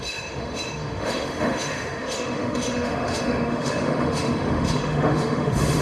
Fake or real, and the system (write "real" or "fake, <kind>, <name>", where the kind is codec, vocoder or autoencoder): fake, autoencoder, DAC-VAE